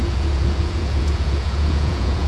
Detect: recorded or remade remade